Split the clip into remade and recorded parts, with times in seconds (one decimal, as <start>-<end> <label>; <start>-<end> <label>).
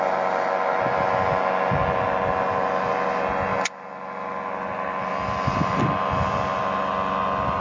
0.0-7.6 recorded